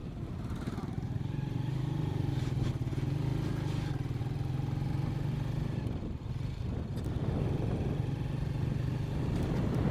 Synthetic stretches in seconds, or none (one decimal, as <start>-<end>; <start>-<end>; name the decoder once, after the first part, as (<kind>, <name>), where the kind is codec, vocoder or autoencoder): 0.0-2.7 (vocoder, BigVGAN v2)